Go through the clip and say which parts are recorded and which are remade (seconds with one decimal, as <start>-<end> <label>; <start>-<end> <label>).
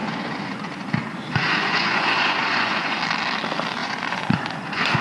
0.0-3.0 remade; 3.0-3.8 recorded; 3.8-5.0 remade